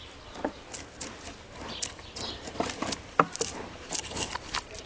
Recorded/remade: recorded